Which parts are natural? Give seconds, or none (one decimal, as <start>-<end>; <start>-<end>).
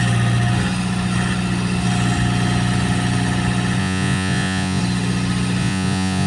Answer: 0.0-3.8; 4.8-5.6